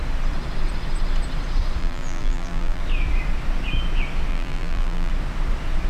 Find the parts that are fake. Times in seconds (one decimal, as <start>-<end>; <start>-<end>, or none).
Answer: 1.8-2.8; 4.3-5.1